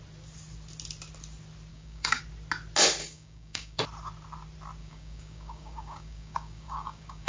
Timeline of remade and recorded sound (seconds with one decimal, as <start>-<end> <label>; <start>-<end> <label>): 0.0-1.7 recorded; 1.7-2.2 remade; 2.2-3.0 recorded; 3.0-3.8 remade; 3.8-4.8 recorded; 4.8-7.3 remade